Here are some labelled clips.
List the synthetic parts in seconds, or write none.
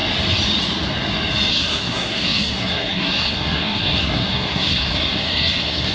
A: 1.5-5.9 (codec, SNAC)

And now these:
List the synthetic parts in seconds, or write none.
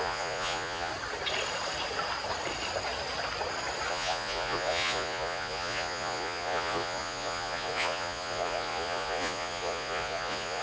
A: 0.0-0.9 (vocoder, Vocos); 3.9-10.6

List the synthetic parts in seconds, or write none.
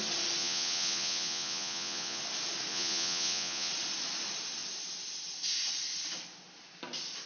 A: 0.4-2.2 (vocoder, Vocos); 2.7-3.7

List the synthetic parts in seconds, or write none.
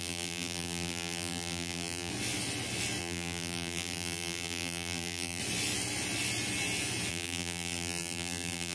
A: 0.0-2.1 (vocoder, BigVGAN v2); 3.0-5.4; 7.1-8.7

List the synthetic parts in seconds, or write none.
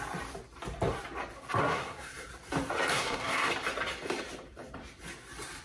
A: 1.6-2.3 (codec, SNAC); 2.9-3.5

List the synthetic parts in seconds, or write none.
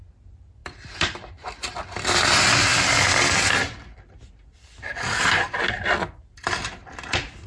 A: 0.6-1.3 (vocoder, BigVGAN v2)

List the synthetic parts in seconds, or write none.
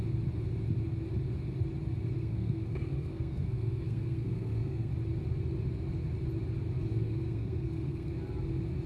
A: 2.2-4.9 (codec, SNAC); 6.9-8.1